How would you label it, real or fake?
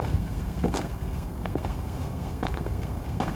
fake